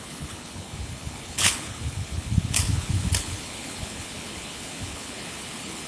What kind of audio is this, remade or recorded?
remade